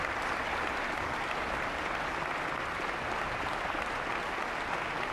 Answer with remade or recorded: recorded